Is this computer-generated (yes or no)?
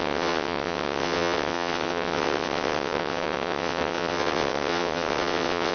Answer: yes